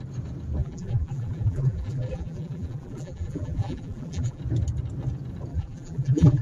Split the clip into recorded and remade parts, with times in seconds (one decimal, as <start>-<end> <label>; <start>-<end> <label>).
0.0-0.6 recorded; 0.6-4.4 remade; 4.4-5.5 recorded; 5.5-6.4 remade